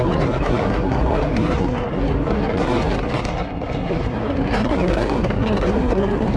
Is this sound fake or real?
fake